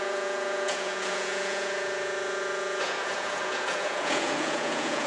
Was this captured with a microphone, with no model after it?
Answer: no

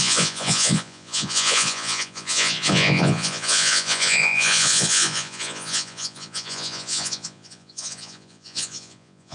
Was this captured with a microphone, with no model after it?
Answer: no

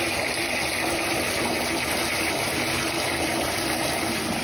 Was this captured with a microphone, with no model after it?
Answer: yes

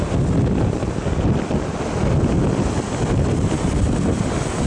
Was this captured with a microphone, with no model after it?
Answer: yes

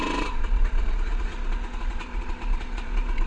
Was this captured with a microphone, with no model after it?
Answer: no